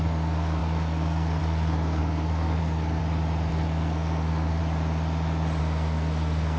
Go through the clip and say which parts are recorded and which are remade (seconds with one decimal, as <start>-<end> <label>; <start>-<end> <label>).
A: 0.0-3.0 remade; 3.0-3.5 recorded; 3.5-4.6 remade; 4.6-5.6 recorded; 5.6-6.6 remade